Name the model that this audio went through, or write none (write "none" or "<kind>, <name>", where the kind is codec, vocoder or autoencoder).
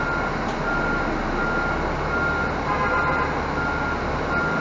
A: none